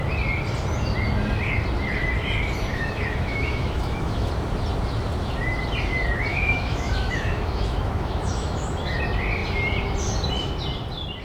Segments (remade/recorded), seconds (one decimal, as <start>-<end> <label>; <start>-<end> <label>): 0.0-2.7 recorded; 2.7-4.3 remade; 4.3-6.3 recorded; 6.3-9.0 remade; 9.0-11.2 recorded